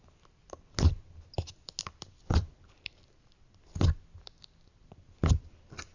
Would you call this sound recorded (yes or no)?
yes